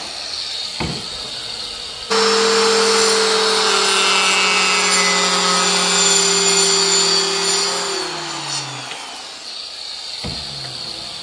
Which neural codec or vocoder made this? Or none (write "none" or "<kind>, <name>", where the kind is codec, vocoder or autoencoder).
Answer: none